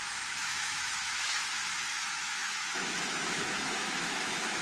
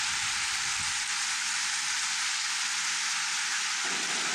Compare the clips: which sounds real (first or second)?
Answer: second